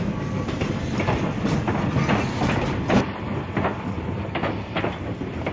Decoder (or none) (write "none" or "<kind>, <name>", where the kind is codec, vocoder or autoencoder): none